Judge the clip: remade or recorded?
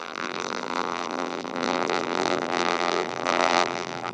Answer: remade